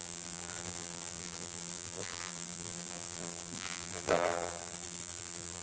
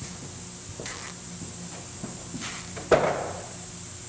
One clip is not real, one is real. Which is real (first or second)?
second